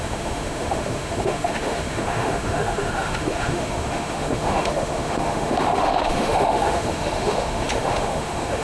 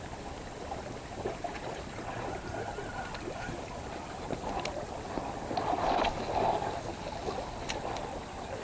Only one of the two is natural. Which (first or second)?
second